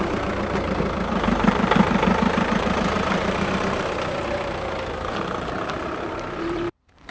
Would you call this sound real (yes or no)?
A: no